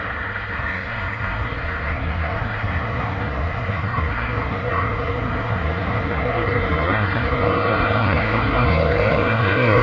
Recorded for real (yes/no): no